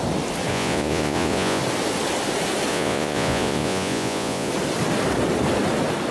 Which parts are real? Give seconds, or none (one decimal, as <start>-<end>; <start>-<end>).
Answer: 0.0-0.5; 1.6-2.7; 4.5-6.1